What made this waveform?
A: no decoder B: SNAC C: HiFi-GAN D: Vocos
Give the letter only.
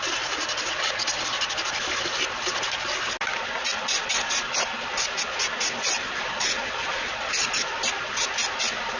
A